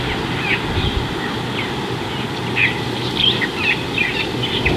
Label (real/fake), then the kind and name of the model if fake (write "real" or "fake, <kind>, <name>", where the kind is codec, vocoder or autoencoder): real